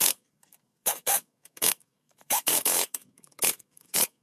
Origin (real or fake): fake